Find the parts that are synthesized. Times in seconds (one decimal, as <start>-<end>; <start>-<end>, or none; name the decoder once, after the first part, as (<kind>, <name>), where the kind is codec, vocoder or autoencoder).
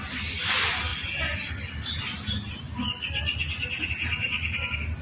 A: none